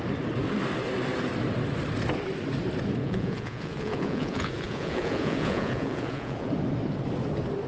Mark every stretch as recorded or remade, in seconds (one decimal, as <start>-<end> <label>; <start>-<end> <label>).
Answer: 0.0-3.0 recorded; 3.0-6.5 remade; 6.5-7.7 recorded